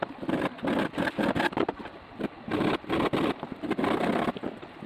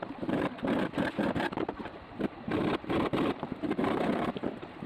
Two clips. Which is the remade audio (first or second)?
second